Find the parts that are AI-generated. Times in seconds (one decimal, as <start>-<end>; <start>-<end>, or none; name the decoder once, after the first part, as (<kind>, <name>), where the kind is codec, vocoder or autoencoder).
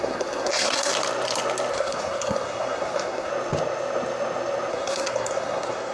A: 0.0-0.9 (codec, SNAC); 1.7-3.3; 4.7-5.9